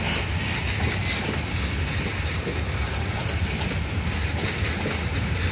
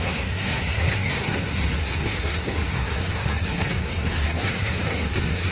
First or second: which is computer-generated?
second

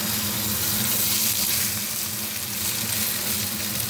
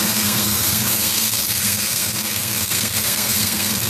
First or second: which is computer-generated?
second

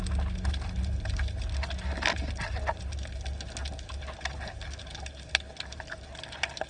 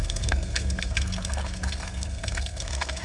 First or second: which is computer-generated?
second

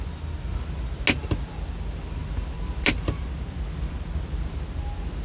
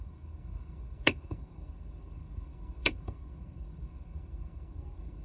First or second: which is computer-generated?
second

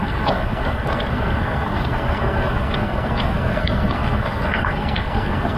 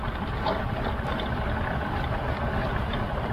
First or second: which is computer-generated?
first